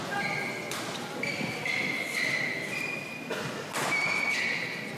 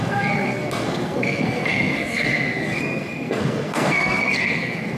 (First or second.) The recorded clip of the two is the first